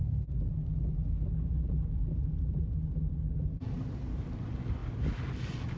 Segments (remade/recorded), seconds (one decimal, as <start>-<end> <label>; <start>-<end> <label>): 0.0-5.8 recorded

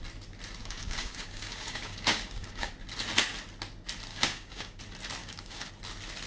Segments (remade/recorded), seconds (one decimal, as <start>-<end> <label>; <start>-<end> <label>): 0.0-0.6 recorded; 0.6-2.7 remade; 2.7-4.1 recorded; 4.1-4.8 remade; 4.8-5.2 recorded; 5.2-5.7 remade; 5.7-6.3 recorded

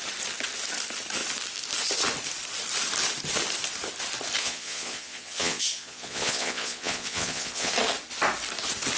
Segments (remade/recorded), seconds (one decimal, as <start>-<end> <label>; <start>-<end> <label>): 0.0-4.4 recorded; 4.4-7.7 remade; 7.7-9.0 recorded

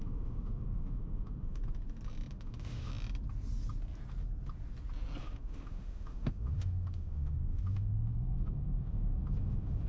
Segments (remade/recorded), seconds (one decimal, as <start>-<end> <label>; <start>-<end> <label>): 0.0-1.6 remade; 1.6-2.3 recorded; 2.3-2.9 remade; 2.9-5.2 recorded; 5.2-9.9 remade

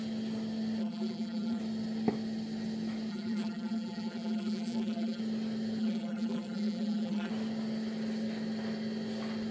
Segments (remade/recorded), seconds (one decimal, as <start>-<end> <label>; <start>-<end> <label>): 0.0-0.8 recorded; 0.8-1.6 remade; 1.6-3.1 recorded; 3.1-5.2 remade; 5.2-5.8 recorded; 5.8-7.3 remade; 7.3-9.5 recorded

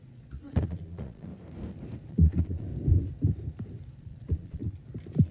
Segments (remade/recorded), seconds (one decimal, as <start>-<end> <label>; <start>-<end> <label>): 0.0-1.3 remade; 1.3-2.1 recorded; 2.1-2.7 remade; 2.7-4.0 recorded; 4.0-4.6 remade; 4.6-5.3 recorded

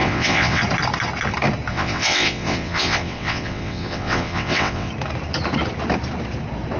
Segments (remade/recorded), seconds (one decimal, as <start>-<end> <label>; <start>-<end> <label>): 0.0-0.6 remade; 0.6-1.7 recorded; 1.7-4.9 remade; 4.9-6.8 recorded